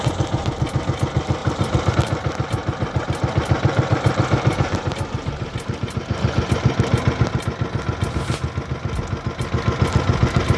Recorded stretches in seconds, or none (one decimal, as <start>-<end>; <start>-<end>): 0.0-1.4; 1.9-2.6; 7.4-10.6